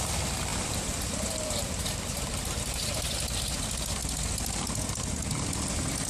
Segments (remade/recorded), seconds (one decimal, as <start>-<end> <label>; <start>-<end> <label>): 0.0-0.5 recorded; 0.5-3.1 remade; 3.1-6.1 recorded